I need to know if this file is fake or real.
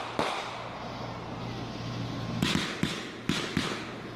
real